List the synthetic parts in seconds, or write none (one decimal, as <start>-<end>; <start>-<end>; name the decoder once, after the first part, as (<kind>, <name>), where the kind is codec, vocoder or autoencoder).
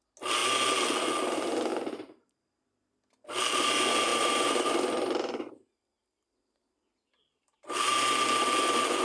1.7-2.7 (vocoder, BigVGAN v2); 4.1-5.5